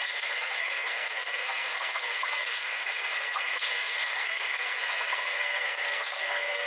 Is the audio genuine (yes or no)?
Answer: no